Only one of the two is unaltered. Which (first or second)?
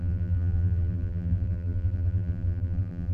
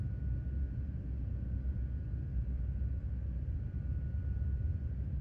second